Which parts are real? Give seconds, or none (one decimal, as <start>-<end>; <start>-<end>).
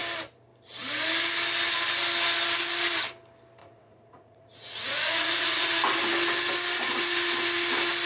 0.0-3.6; 5.7-8.1